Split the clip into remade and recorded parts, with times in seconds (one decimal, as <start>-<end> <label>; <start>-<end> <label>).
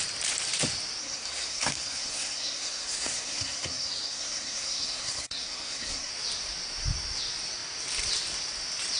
0.0-1.0 recorded; 1.0-6.1 remade; 6.1-9.0 recorded